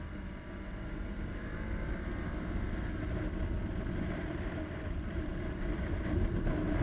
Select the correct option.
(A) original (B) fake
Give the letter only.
A